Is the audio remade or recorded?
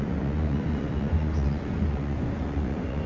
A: remade